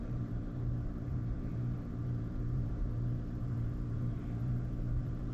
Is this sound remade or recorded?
remade